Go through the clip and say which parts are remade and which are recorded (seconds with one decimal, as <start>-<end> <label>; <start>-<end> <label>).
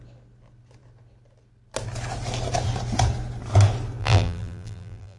0.0-4.0 recorded; 4.0-5.2 remade